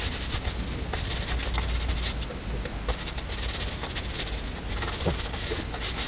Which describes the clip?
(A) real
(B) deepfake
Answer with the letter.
A